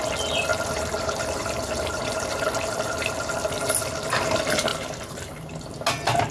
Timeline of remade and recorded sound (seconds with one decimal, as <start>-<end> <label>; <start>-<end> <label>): 0.0-0.5 recorded; 0.5-3.3 remade; 3.3-4.7 recorded; 4.7-5.5 remade; 5.5-6.3 recorded